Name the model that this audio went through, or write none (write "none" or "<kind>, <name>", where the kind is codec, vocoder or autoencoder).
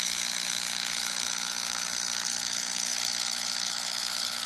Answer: codec, HILCodec